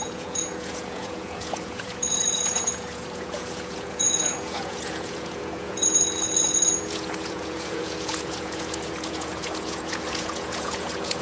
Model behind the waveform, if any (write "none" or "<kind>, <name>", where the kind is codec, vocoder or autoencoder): vocoder, Vocos